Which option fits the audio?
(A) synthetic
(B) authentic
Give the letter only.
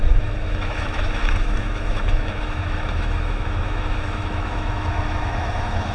A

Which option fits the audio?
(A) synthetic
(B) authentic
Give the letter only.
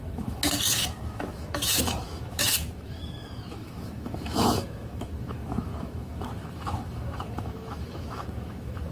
A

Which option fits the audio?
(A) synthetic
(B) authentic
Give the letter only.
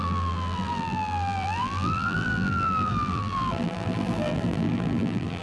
A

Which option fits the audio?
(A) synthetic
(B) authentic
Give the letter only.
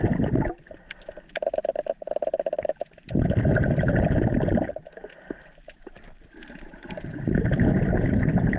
B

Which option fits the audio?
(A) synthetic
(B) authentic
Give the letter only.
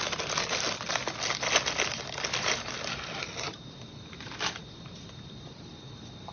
B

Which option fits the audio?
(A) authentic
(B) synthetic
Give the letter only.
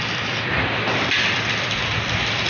A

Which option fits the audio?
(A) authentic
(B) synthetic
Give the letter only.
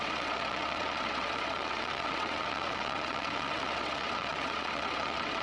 B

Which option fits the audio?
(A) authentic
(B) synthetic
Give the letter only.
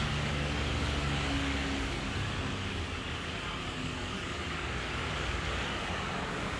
B